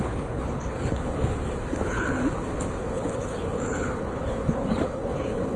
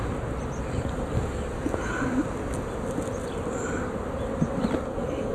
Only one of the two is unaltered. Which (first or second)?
second